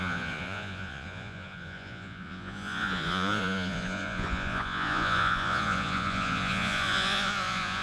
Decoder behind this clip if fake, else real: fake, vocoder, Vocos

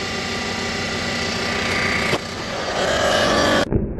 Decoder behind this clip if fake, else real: fake, vocoder, Vocos